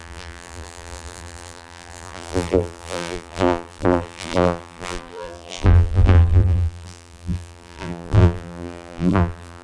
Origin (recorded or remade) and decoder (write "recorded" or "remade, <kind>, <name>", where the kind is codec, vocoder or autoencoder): remade, vocoder, BigVGAN v2